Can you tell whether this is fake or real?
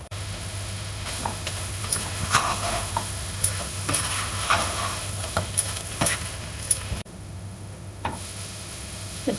fake